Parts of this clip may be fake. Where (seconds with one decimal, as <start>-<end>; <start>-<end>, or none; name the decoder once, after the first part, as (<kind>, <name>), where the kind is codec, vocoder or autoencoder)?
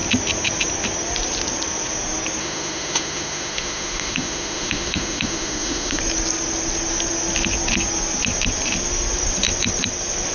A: 2.4-6.0 (autoencoder, DAC-VAE)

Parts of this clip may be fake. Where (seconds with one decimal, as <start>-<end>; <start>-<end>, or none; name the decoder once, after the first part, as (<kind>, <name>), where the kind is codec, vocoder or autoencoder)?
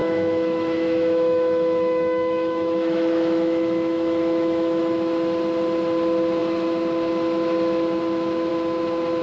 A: 0.0-4.8 (autoencoder, DAC-VAE)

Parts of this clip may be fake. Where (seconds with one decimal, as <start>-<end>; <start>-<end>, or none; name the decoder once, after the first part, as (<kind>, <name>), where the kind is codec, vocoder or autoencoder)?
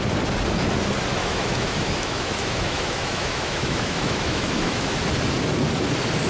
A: 1.2-5.0 (autoencoder, DAC-VAE)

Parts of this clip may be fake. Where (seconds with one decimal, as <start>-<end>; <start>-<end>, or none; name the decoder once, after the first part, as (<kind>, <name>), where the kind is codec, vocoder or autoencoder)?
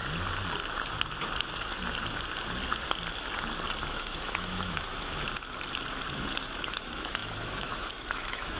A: 3.9-4.9 (autoencoder, DAC-VAE); 6.7-8.6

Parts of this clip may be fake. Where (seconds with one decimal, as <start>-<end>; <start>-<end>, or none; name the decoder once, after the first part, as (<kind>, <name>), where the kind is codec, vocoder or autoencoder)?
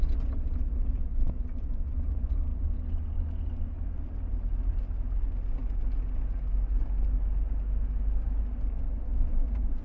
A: none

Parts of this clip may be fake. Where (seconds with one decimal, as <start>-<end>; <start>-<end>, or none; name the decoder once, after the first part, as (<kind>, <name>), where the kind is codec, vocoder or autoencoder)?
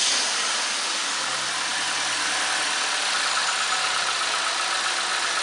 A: none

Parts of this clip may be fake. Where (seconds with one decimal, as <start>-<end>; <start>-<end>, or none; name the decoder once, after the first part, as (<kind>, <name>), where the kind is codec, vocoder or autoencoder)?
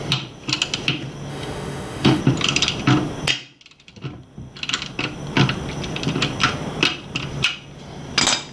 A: 1.3-2.2 (autoencoder, DAC-VAE)